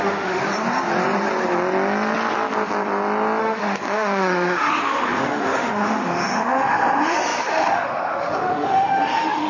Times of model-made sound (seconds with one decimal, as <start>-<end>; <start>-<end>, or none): 0.0-0.4; 3.4-9.5